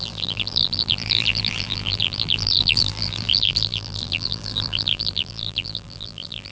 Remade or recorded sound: remade